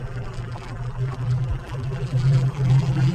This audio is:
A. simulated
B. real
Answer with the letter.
A